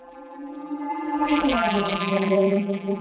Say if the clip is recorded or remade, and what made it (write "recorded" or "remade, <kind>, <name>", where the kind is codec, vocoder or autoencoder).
remade, vocoder, BigVGAN v2